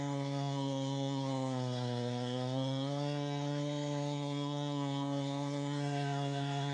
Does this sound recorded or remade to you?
remade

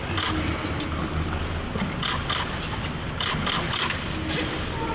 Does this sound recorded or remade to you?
recorded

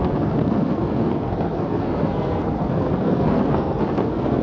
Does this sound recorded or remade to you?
remade